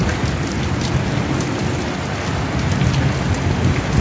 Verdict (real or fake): real